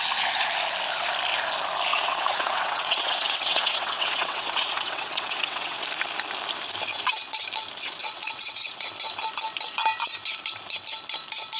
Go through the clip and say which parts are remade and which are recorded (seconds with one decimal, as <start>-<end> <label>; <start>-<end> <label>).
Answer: 0.0-1.9 recorded; 1.9-5.8 remade; 5.8-8.0 recorded; 8.0-8.9 remade; 8.9-11.6 recorded